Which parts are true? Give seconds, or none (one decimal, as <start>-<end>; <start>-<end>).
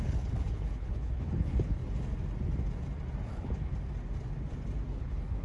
1.8-3.3; 3.7-5.0